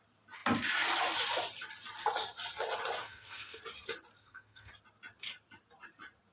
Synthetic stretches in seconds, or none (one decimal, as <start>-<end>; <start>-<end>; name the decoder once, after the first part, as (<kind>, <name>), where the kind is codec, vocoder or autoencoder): 3.0-3.6 (codec, SNAC); 4.2-4.7